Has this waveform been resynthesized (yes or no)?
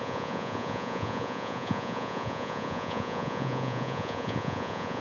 yes